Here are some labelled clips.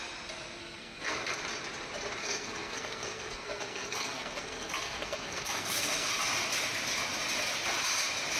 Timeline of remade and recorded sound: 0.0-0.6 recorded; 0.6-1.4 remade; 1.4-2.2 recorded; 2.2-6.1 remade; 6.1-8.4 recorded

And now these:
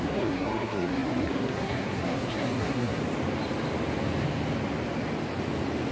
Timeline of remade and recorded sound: 0.0-3.0 remade; 3.0-5.9 recorded

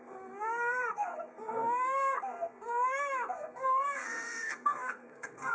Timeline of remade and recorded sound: 0.0-5.5 remade

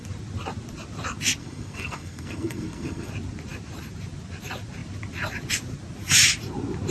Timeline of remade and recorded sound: 0.0-1.4 recorded; 1.4-3.1 remade; 3.1-6.9 recorded